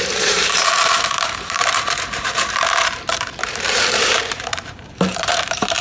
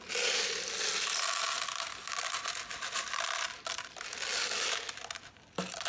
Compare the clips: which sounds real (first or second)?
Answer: second